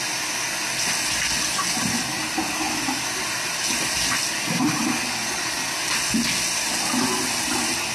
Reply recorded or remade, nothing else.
recorded